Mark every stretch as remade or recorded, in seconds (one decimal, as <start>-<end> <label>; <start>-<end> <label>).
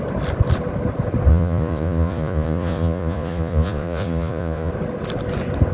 0.0-1.3 recorded; 1.3-4.7 remade; 4.7-5.7 recorded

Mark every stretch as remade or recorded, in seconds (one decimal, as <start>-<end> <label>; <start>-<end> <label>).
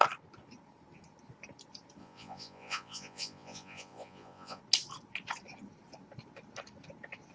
0.0-2.0 recorded; 2.0-4.6 remade; 4.6-7.3 recorded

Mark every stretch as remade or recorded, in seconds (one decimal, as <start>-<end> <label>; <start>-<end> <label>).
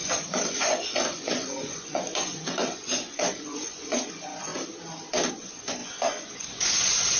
0.0-4.5 remade; 4.5-5.3 recorded; 5.3-7.2 remade